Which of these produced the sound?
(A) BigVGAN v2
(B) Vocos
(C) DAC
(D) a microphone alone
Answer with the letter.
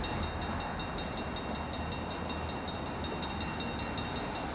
D